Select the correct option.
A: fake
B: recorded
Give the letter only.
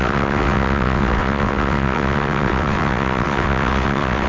A